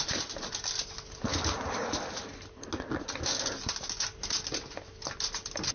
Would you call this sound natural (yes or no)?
yes